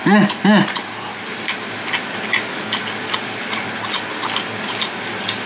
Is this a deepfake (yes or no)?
no